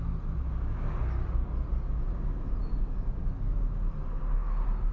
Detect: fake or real real